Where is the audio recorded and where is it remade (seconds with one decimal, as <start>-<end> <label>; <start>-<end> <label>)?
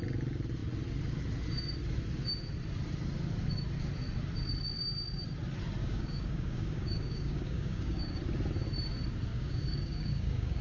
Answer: 0.0-5.8 recorded; 5.8-8.2 remade; 8.2-9.3 recorded; 9.3-10.6 remade